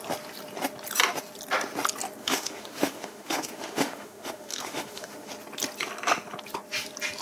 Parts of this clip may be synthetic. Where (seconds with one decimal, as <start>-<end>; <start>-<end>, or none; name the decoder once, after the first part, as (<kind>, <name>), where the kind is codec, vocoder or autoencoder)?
2.2-5.3 (autoencoder, DAC-VAE)